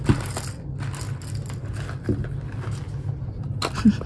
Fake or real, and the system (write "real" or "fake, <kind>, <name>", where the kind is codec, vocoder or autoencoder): real